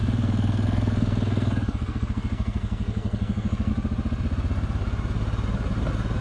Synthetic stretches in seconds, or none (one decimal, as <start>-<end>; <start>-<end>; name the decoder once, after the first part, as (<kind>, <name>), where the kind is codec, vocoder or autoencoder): 0.0-3.7 (codec, SNAC)